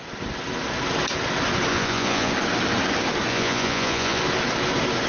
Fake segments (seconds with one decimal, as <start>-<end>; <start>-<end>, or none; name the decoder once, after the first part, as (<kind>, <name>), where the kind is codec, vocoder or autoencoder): 1.7-2.3 (vocoder, Vocos); 3.3-4.2